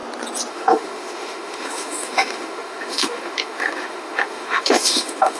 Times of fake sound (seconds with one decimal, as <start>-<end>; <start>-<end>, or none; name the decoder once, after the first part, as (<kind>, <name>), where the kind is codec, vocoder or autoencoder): 0.5-5.4 (autoencoder, DAC-VAE)